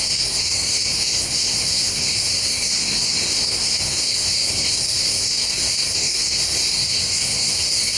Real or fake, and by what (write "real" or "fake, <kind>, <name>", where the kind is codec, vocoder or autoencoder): fake, codec, SNAC